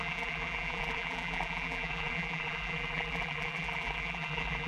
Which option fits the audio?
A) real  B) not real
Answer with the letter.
B